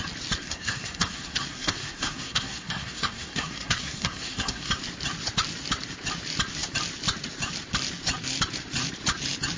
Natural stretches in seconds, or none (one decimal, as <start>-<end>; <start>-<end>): 0.0-0.4; 4.7-9.6